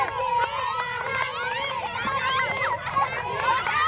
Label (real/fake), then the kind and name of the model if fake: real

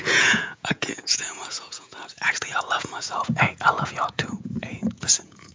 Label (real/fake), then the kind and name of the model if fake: fake, vocoder, Vocos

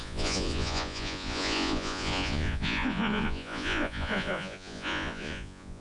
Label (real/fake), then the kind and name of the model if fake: fake, vocoder, Vocos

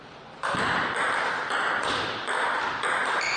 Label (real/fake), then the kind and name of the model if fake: real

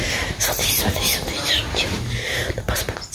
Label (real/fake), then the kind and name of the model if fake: fake, vocoder, BigVGAN v2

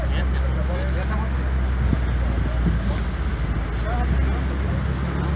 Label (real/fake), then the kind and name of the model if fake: real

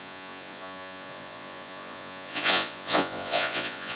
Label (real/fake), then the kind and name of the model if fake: fake, vocoder, Vocos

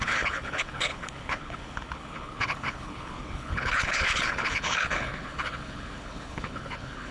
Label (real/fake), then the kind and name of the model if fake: fake, codec, HILCodec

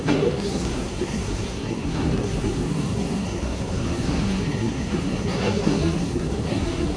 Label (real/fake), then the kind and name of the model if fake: fake, codec, SNAC